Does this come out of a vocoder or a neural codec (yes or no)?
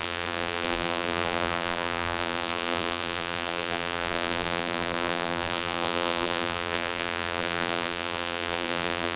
yes